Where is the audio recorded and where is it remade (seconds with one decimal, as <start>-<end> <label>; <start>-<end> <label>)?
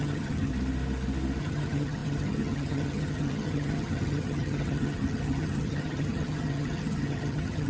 0.0-0.5 remade; 0.5-1.4 recorded; 1.4-7.7 remade